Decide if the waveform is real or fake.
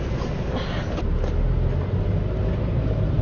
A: real